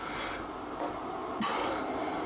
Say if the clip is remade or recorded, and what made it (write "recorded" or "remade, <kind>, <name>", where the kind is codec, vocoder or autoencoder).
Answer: recorded